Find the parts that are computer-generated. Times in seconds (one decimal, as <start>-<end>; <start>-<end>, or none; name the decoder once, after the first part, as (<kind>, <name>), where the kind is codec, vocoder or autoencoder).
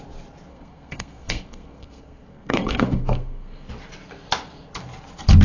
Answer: 0.5-3.7 (codec, SNAC)